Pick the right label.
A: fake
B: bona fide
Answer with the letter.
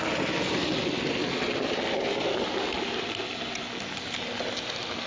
B